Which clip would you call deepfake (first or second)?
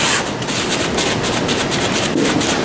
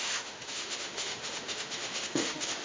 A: second